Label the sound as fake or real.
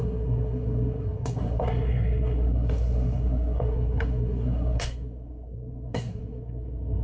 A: fake